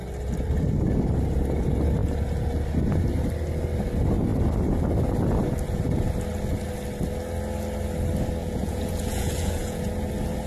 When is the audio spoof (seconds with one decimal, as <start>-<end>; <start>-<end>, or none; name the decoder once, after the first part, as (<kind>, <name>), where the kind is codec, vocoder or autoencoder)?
8.4-9.9 (vocoder, Vocos)